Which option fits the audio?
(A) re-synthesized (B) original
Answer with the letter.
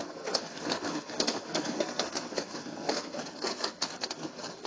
A